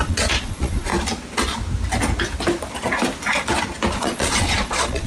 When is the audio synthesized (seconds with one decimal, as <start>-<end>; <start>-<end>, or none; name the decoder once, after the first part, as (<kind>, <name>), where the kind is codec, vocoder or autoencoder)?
0.0-0.9 (vocoder, Vocos); 3.9-5.1